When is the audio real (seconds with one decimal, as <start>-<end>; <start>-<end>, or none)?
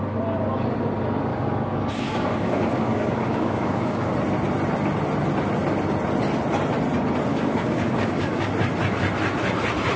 0.0-1.3; 4.1-7.3; 8.5-10.0